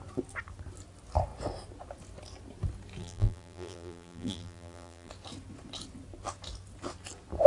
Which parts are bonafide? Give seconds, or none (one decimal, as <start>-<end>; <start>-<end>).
0.0-3.0; 5.1-7.5